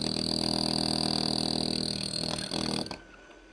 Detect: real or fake real